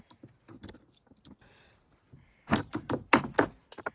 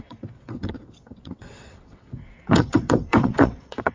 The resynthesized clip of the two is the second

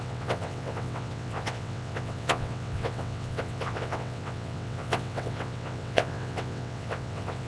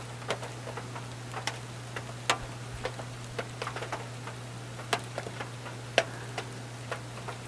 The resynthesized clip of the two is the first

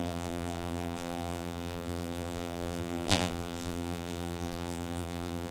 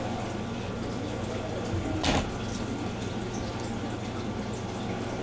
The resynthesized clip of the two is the first